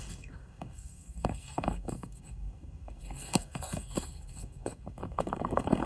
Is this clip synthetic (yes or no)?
yes